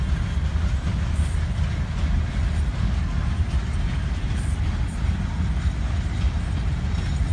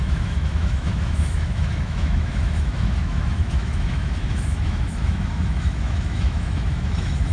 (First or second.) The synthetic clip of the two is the second